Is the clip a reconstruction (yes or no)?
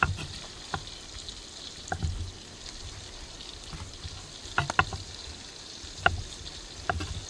no